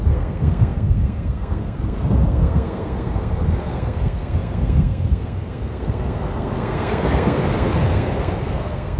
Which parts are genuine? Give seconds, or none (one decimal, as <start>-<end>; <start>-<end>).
none